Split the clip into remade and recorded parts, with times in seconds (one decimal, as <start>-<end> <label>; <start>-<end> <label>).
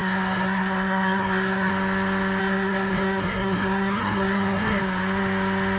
0.0-1.7 remade; 1.7-2.4 recorded; 2.4-4.8 remade; 4.8-5.8 recorded